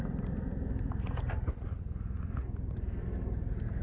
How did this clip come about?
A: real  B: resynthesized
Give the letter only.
A